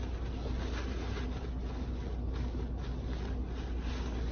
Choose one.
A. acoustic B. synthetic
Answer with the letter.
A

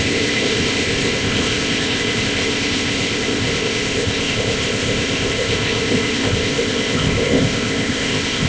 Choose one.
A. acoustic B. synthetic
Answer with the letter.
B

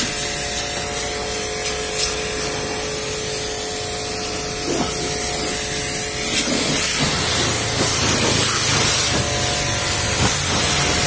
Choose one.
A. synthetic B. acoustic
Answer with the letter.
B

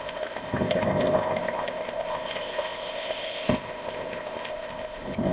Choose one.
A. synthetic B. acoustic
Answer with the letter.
A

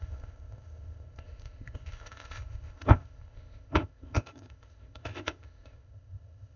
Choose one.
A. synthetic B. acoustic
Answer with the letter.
A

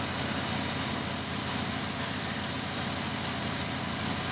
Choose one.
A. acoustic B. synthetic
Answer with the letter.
A